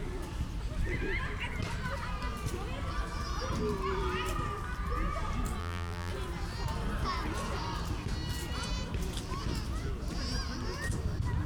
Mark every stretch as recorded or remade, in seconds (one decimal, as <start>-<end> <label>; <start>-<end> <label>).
0.0-5.6 recorded; 5.6-6.1 remade; 6.1-11.5 recorded